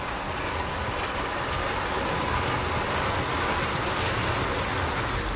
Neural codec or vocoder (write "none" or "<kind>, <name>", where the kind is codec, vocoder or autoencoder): none